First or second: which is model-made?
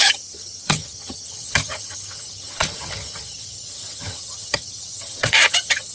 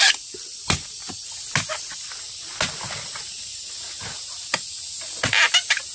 first